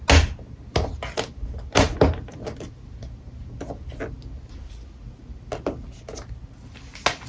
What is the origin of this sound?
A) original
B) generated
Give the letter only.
A